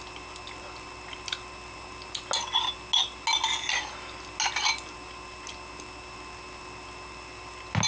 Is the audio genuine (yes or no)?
yes